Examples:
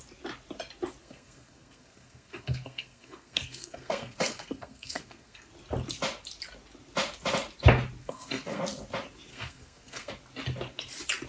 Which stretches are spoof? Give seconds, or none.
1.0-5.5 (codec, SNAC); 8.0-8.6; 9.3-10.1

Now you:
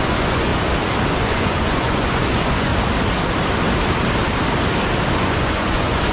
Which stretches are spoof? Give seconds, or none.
0.0-0.5 (vocoder, Vocos); 1.1-2.7; 5.2-6.1

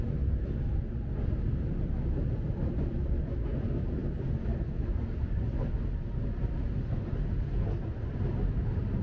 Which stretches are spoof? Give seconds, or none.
none

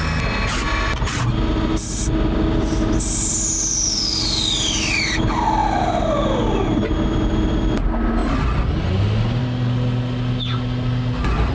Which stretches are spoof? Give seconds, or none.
none

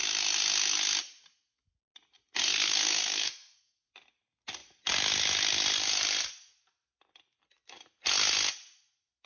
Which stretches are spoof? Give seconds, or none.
2.5-3.9 (codec, SNAC)

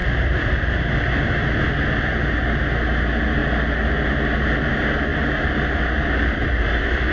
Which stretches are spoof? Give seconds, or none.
0.0-0.7 (vocoder, BigVGAN v2); 5.1-7.1

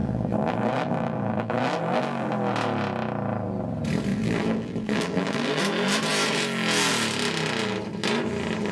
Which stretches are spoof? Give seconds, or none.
0.0-2.3 (vocoder, BigVGAN v2); 4.1-5.6

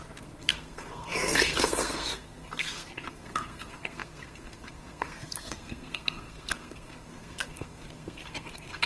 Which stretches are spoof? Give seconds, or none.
0.0-8.9 (codec, SNAC)